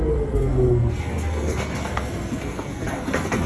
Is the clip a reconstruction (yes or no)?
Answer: yes